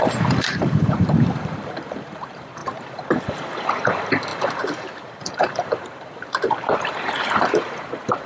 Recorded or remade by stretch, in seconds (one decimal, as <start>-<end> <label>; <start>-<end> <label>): 0.0-8.3 remade

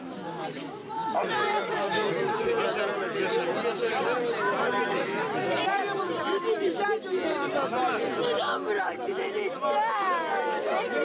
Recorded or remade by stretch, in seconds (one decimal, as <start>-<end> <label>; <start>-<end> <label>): 0.0-11.0 recorded

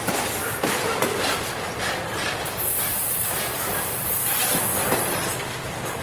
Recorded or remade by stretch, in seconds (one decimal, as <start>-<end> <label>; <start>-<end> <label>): 0.0-0.4 recorded; 0.4-3.5 remade; 3.5-6.0 recorded

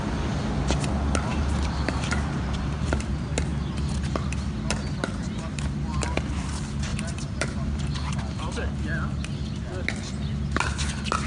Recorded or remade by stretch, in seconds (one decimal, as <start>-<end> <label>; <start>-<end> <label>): 0.0-1.3 recorded; 1.3-3.1 remade; 3.1-6.9 recorded; 6.9-8.5 remade; 8.5-11.3 recorded

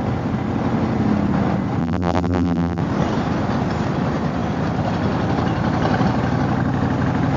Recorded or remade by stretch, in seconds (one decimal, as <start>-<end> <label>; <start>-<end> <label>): 0.0-1.8 recorded; 1.8-2.8 remade; 2.8-7.4 recorded

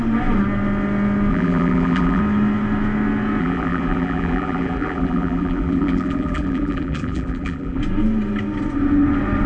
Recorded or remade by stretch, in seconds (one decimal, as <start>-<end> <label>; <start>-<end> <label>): 0.0-1.3 recorded; 1.3-2.2 remade; 2.2-3.4 recorded; 3.4-7.8 remade; 7.8-9.5 recorded